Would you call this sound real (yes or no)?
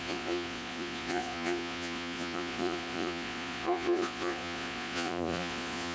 no